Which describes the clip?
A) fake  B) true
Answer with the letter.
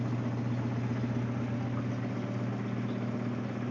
B